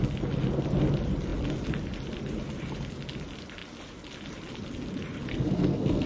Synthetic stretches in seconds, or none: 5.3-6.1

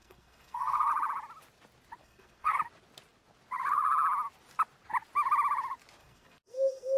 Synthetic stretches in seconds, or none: 0.0-0.9; 2.0-2.6; 6.0-7.0

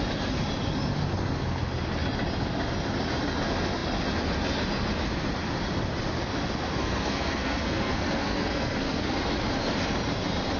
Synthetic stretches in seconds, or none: 6.8-9.2